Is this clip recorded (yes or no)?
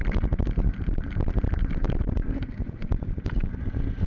no